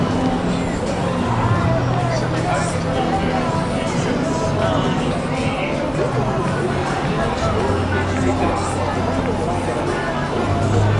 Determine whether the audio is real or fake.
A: real